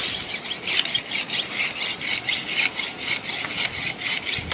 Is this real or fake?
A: real